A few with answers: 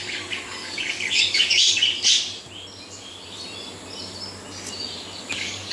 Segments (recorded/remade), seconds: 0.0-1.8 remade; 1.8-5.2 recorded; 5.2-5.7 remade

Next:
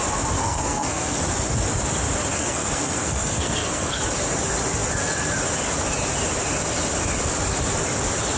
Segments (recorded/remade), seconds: 0.0-0.4 recorded; 0.4-1.2 remade; 1.2-2.3 recorded; 2.3-4.0 remade; 4.0-8.4 recorded